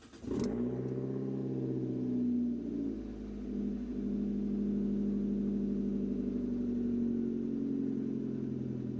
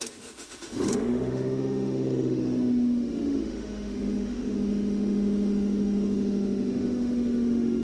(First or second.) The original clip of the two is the first